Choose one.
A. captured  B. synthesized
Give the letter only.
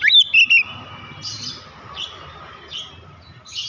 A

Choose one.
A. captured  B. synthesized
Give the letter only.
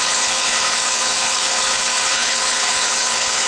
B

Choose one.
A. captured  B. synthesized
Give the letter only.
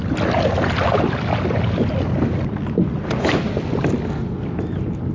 A